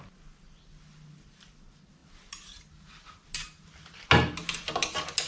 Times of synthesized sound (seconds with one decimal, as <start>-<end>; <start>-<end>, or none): none